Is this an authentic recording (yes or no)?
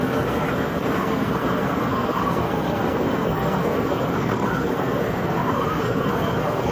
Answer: no